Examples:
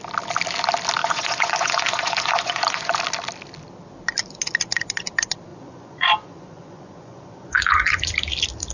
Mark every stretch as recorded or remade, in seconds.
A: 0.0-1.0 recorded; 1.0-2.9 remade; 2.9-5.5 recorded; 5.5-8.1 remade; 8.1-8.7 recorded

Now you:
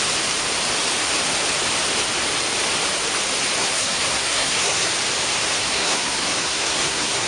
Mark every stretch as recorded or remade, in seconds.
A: 0.0-3.6 recorded; 3.6-4.9 remade; 4.9-5.5 recorded; 5.5-7.3 remade

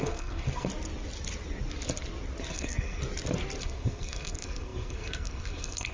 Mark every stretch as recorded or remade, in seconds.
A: 0.0-0.7 remade; 0.7-2.5 recorded; 2.5-3.0 remade; 3.0-3.6 recorded; 3.6-5.9 remade

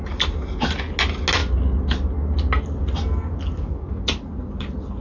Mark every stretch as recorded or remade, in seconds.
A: 0.0-5.0 recorded

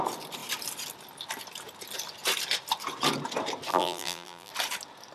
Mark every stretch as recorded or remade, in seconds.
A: 0.0-3.7 recorded; 3.7-4.5 remade; 4.5-5.1 recorded

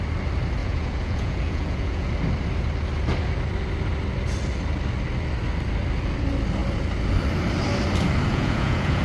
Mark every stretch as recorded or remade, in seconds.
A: 0.0-0.6 recorded; 0.6-2.1 remade; 2.1-8.3 recorded; 8.3-9.0 remade

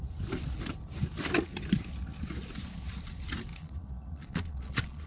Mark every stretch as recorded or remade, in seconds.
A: 0.0-3.5 recorded; 3.5-5.1 remade